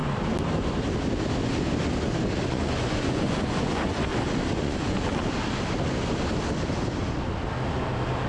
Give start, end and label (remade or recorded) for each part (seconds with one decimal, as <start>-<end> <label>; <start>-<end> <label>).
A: 0.0-2.5 recorded; 2.5-4.1 remade; 4.1-4.6 recorded; 4.6-5.2 remade; 5.2-8.3 recorded